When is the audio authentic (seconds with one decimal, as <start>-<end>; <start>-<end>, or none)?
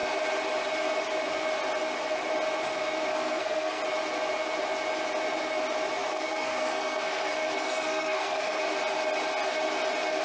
0.0-3.1; 3.8-6.1; 8.6-10.2